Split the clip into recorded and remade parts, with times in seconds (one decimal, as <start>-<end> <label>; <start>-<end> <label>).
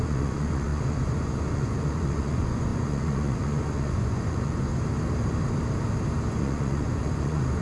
0.0-4.7 remade; 4.7-6.3 recorded; 6.3-7.6 remade